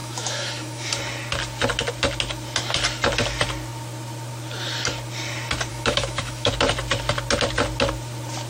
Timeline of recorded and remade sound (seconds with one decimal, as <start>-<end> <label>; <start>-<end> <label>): 0.0-0.9 remade; 0.9-5.7 recorded; 5.7-6.5 remade; 6.5-8.5 recorded